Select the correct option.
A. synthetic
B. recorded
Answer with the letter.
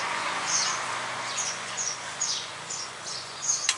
A